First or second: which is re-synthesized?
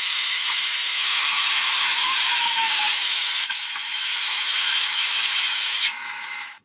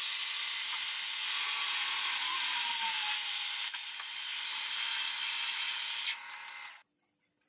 first